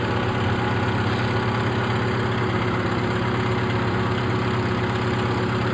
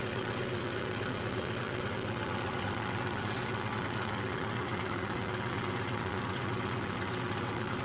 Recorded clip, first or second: first